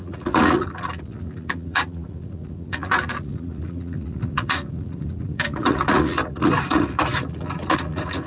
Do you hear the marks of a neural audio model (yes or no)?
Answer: yes